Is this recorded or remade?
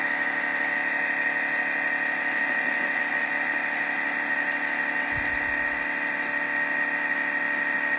recorded